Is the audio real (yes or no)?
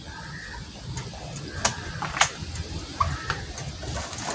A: yes